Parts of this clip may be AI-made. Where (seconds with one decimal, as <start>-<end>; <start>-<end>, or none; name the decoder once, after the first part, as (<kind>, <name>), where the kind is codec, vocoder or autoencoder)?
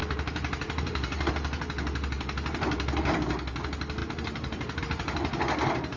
0.0-1.3 (vocoder, BigVGAN v2); 4.0-4.8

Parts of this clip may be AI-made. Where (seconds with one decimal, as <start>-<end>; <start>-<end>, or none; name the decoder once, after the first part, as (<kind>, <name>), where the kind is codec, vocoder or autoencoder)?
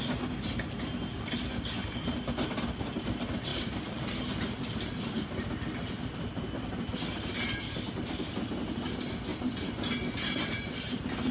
1.5-2.1 (vocoder, BigVGAN v2); 3.5-5.5; 9.3-9.9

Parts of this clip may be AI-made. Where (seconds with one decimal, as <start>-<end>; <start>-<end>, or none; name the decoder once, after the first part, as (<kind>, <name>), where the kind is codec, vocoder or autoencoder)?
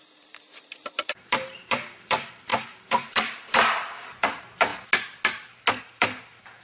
0.0-4.7 (vocoder, BigVGAN v2); 5.8-6.6